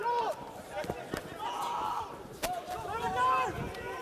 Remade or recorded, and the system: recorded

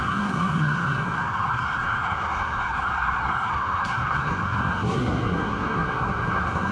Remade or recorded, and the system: remade, codec, SNAC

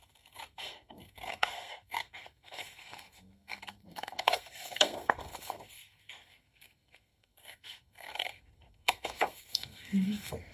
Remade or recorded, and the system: remade, codec, SNAC